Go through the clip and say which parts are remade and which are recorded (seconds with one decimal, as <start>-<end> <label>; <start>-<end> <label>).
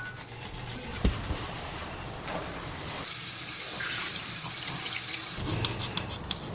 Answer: 0.0-0.9 recorded; 0.9-4.8 remade; 4.8-5.2 recorded; 5.2-5.7 remade; 5.7-6.5 recorded